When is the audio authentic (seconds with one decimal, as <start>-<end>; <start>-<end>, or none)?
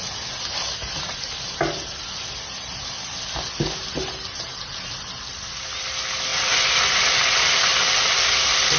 0.0-8.8